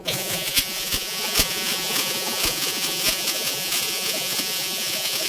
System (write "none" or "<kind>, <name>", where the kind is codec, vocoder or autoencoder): vocoder, Vocos